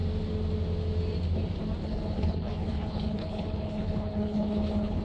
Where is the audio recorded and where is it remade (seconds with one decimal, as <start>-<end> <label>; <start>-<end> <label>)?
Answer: 0.0-1.8 recorded; 1.8-5.0 remade